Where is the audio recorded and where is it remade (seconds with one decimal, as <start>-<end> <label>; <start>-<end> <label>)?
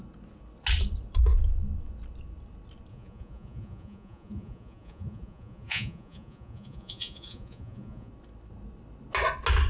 0.0-2.9 recorded; 2.9-8.1 remade; 8.1-9.7 recorded